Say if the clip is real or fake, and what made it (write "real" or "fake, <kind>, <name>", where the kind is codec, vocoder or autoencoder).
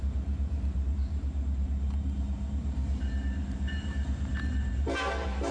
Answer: fake, vocoder, BigVGAN v2